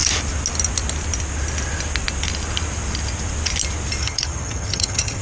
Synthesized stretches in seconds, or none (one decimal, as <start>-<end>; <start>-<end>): 4.0-5.2